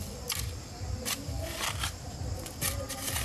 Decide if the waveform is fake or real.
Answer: real